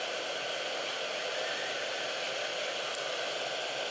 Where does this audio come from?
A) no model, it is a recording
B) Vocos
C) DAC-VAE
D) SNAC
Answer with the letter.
A